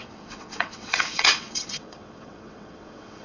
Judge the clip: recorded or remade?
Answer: remade